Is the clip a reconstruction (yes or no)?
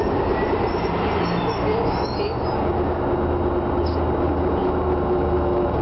no